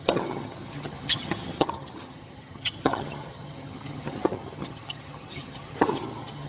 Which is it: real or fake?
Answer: fake